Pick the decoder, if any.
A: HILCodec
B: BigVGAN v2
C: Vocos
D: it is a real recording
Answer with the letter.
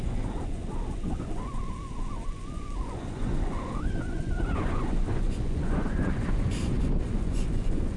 C